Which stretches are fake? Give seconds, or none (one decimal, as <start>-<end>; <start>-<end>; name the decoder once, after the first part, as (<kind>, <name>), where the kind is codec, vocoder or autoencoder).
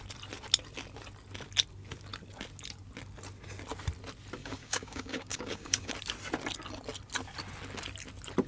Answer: 4.4-5.9 (codec, DAC)